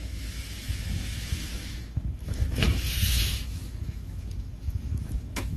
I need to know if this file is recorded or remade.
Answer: remade